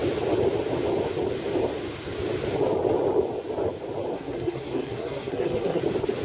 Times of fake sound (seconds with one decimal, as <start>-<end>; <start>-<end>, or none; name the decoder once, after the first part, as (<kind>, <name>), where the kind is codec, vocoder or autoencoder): 4.1-5.8 (codec, SNAC)